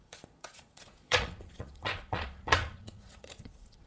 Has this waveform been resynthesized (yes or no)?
yes